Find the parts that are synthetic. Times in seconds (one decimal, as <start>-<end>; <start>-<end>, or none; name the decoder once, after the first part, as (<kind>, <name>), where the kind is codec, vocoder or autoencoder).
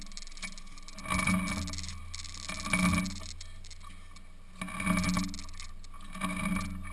none